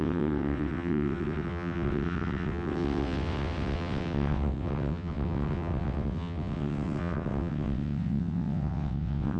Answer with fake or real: fake